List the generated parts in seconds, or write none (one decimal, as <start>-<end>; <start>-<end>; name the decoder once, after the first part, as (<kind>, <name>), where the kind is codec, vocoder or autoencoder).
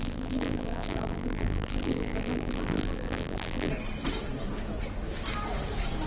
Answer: 0.0-3.7 (vocoder, BigVGAN v2)